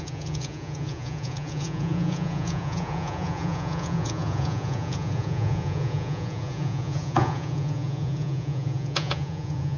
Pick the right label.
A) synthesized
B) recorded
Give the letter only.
A